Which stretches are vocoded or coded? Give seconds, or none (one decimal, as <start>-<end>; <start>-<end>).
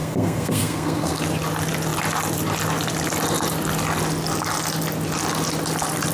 0.0-1.2